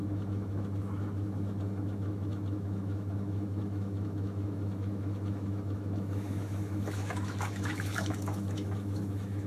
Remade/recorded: remade